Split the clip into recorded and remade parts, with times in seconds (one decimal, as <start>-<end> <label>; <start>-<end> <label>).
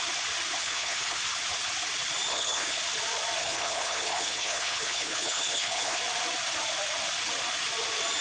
0.0-0.6 recorded; 0.6-1.2 remade; 1.2-2.3 recorded; 2.3-2.8 remade; 2.8-3.4 recorded; 3.4-6.0 remade; 6.0-8.2 recorded